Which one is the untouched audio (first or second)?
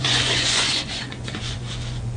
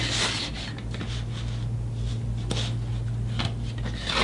second